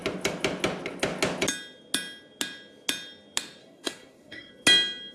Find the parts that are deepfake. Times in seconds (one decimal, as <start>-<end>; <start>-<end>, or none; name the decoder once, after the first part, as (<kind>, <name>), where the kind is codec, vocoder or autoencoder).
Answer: 3.6-4.5 (codec, SNAC)